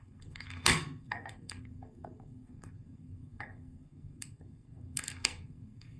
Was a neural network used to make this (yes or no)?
yes